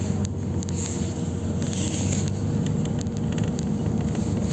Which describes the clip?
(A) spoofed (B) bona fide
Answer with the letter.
B